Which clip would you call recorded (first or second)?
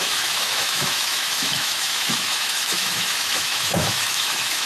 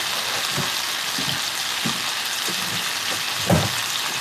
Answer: second